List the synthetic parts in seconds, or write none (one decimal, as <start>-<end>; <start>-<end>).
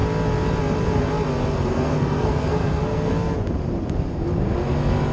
1.5-3.1